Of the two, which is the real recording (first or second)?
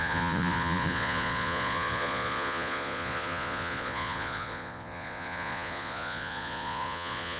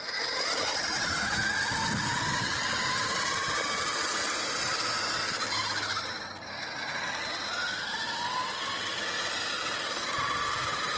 second